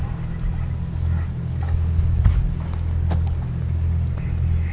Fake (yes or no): no